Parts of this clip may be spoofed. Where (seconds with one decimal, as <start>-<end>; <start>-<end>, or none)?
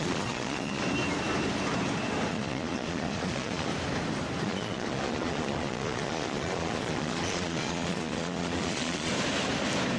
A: 0.0-0.8; 2.3-3.7; 4.4-9.1